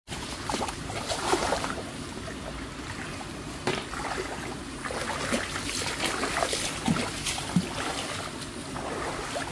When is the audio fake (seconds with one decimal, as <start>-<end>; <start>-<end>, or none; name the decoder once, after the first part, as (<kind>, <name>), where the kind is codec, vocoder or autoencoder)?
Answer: 0.0-1.9 (vocoder, BigVGAN v2)